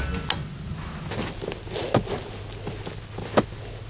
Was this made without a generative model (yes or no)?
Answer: yes